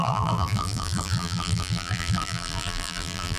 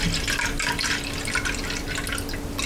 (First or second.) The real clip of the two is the second